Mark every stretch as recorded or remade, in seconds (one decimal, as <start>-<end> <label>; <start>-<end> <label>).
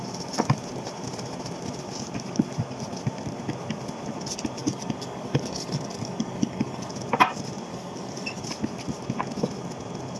0.0-4.6 recorded; 4.6-6.9 remade; 6.9-7.7 recorded; 7.7-8.4 remade; 8.4-10.2 recorded